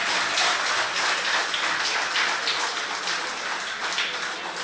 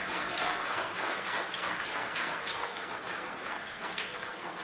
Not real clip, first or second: second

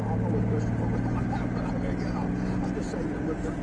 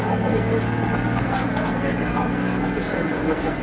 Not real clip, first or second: second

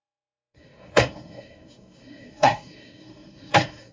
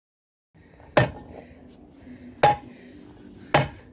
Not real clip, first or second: first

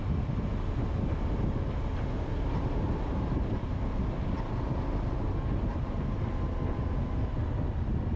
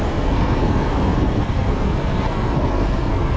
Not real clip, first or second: second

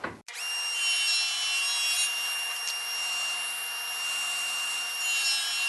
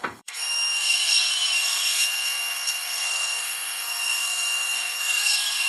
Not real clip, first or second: second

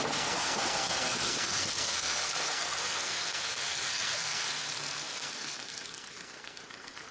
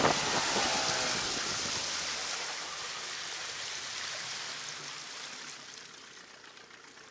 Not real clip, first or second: first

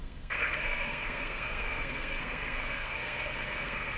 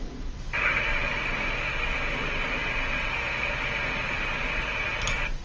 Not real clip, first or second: first